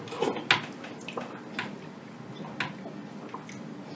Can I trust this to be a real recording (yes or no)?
yes